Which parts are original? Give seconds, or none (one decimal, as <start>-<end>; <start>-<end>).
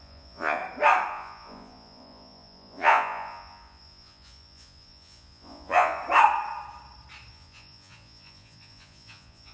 0.6-1.1; 6.0-7.3